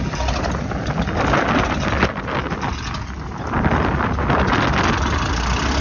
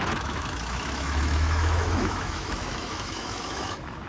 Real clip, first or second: first